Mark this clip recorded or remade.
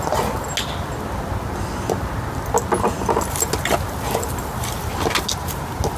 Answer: recorded